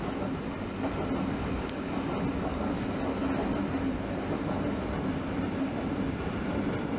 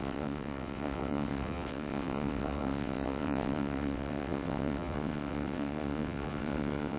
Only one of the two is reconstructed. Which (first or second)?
second